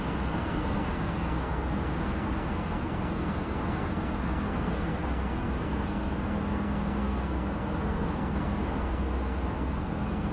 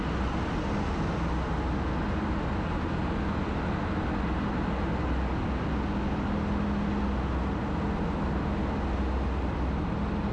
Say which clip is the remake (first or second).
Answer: first